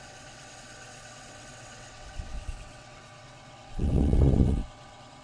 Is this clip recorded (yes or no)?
no